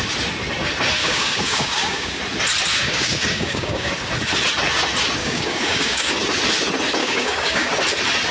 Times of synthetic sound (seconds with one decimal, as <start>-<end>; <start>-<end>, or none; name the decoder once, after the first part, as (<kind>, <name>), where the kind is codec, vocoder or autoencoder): 1.0-2.2 (codec, DAC); 2.7-3.9; 5.2-6.1; 7.0-7.7